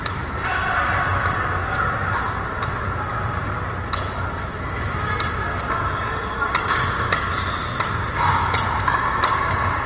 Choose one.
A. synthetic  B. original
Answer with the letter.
B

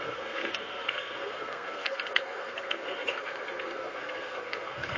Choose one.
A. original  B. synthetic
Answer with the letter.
B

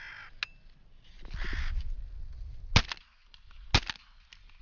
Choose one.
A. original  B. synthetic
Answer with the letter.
A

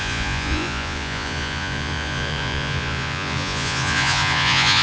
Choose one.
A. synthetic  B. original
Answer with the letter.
A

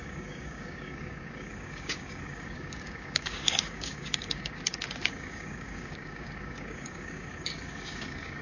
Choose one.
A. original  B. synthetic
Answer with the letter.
B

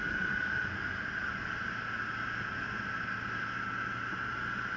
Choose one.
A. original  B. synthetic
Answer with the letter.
A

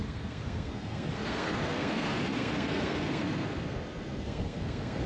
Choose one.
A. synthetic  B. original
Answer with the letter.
A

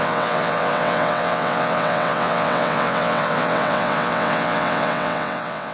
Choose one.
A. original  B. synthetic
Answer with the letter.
B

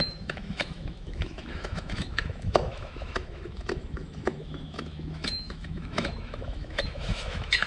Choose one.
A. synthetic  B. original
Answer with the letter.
A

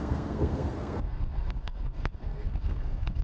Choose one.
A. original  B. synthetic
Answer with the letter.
B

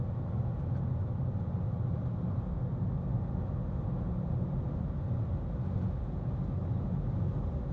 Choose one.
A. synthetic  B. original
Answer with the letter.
B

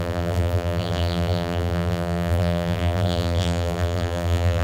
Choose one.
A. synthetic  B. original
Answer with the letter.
A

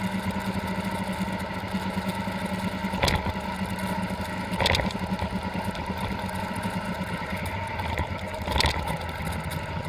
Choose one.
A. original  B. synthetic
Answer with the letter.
A